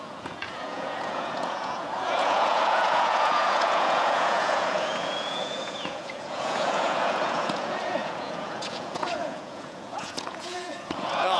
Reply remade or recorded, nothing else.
remade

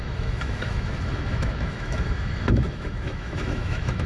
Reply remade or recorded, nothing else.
remade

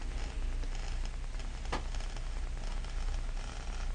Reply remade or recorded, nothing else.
recorded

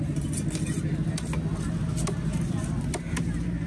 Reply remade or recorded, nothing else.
recorded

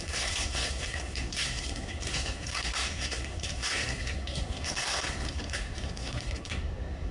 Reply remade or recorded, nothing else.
remade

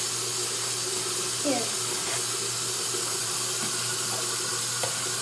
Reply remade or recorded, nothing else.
recorded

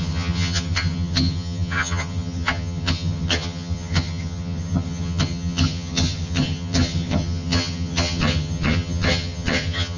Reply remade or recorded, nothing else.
remade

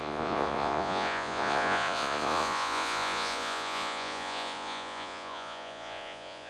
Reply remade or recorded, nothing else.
remade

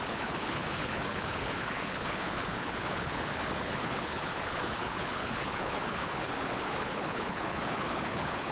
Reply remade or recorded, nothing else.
remade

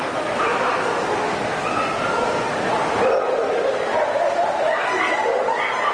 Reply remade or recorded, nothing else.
recorded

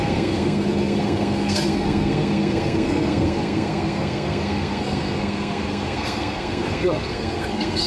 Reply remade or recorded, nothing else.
remade